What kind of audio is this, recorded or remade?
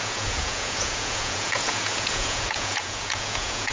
remade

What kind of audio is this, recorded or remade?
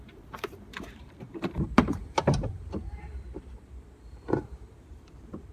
remade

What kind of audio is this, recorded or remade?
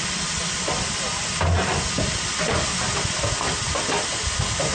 recorded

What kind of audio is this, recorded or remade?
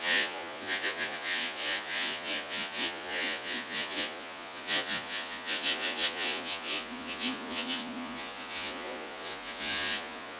remade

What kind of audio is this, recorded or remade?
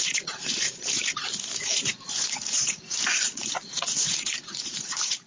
remade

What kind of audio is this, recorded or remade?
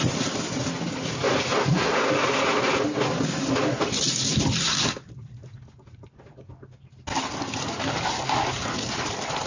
recorded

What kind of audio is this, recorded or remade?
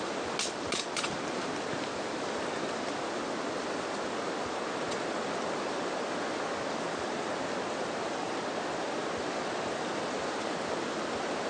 recorded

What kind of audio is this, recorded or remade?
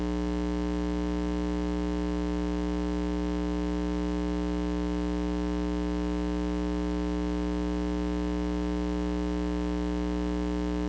recorded